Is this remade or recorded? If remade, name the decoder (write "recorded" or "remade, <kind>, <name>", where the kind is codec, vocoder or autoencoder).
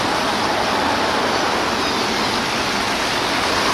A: recorded